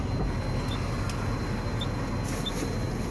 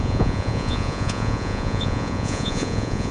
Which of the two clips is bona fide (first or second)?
first